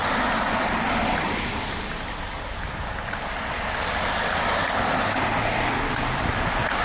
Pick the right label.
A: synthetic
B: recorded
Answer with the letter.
B